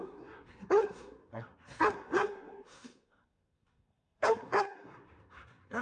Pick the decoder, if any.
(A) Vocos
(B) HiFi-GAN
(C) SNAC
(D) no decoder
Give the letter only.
C